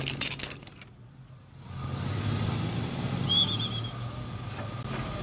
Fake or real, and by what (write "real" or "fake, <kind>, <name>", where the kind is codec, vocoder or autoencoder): real